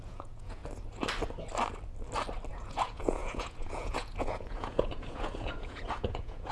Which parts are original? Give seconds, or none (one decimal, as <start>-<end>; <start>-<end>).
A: 0.6-2.5